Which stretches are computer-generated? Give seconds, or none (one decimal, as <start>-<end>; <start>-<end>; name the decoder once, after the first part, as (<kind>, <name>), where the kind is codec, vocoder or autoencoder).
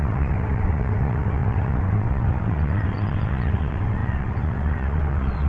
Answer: 0.0-5.5 (vocoder, WaveNeXt)